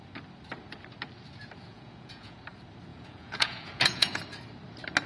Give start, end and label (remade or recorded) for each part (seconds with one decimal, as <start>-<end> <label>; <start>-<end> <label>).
0.0-1.7 recorded; 1.7-2.4 remade; 2.4-2.9 recorded; 2.9-4.2 remade; 4.2-5.1 recorded